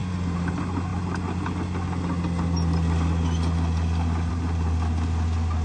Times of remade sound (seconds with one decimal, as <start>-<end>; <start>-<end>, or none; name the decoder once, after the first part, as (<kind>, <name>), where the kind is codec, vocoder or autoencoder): none